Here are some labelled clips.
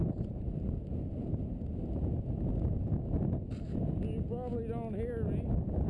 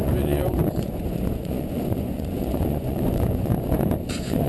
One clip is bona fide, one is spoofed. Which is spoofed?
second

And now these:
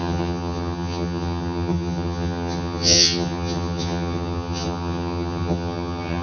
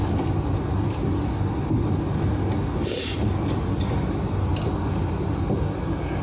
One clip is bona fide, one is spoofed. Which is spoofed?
first